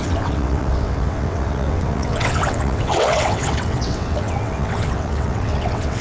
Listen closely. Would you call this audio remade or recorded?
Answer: remade